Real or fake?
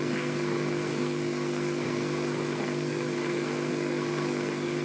fake